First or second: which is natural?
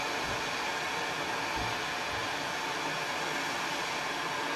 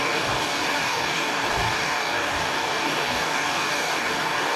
first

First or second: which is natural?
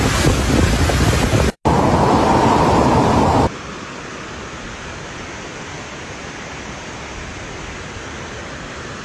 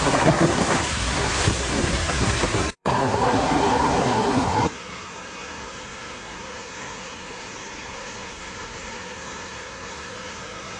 first